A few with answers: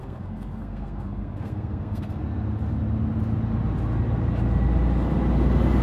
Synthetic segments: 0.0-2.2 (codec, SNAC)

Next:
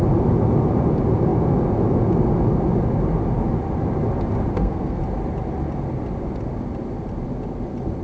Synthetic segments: 4.5-5.0 (codec, SNAC)

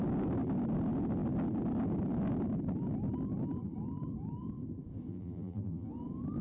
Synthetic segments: 5.1-5.9 (vocoder, BigVGAN v2)

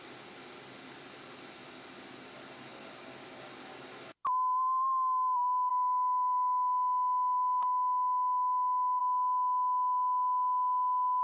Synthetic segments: 5.7-9.0 (autoencoder, DAC-VAE)